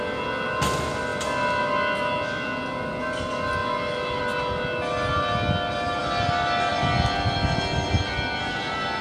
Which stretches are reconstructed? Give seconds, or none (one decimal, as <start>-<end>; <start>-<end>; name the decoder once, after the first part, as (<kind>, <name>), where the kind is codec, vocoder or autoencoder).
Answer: none